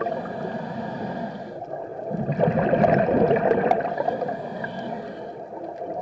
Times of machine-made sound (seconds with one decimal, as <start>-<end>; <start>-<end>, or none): none